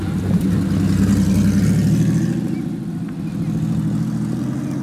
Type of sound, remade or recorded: recorded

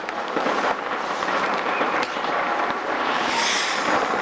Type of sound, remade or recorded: remade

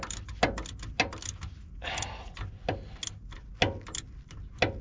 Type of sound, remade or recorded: recorded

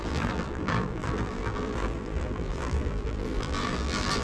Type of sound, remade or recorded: remade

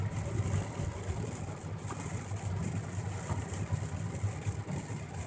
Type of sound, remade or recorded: remade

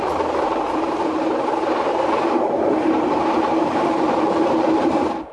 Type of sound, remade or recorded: remade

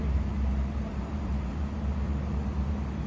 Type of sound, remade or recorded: remade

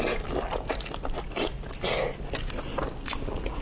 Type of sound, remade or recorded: recorded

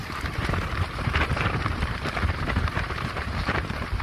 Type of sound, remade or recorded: remade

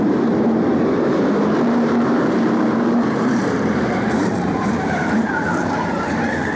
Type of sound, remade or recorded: remade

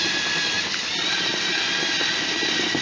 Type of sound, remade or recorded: recorded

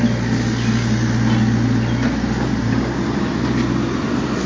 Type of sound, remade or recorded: recorded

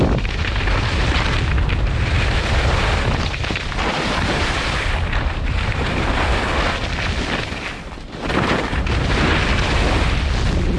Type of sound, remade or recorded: recorded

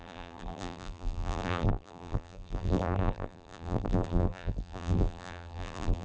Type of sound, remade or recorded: remade